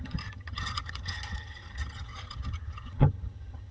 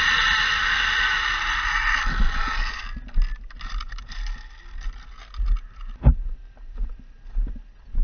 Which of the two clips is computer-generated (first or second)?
first